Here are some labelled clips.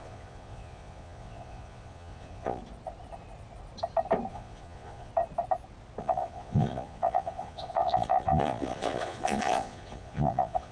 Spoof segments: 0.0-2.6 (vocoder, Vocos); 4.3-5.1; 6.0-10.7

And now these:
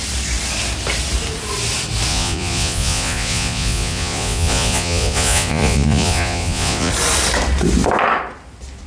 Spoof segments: 2.1-6.9 (vocoder, Vocos)